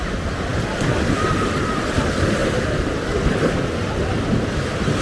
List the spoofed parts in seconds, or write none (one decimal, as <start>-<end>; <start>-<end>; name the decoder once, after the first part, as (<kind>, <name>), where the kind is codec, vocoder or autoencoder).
none